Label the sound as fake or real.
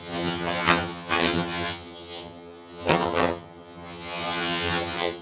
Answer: fake